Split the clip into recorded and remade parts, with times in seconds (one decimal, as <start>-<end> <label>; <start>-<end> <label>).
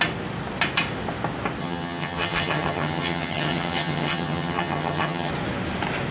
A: 0.0-1.6 recorded; 1.6-5.3 remade; 5.3-6.1 recorded